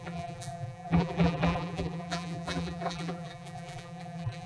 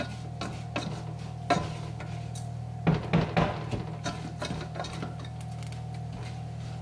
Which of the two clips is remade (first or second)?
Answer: first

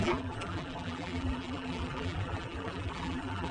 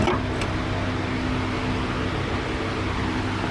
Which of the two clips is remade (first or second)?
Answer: first